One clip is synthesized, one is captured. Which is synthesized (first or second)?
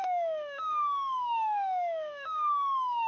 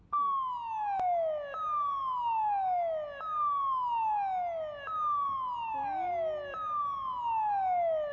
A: first